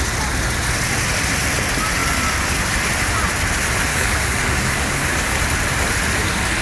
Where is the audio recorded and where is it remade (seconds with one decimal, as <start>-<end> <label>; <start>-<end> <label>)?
0.0-3.9 recorded; 3.9-5.4 remade; 5.4-6.6 recorded